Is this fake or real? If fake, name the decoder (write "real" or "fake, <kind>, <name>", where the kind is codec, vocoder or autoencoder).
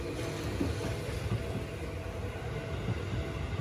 real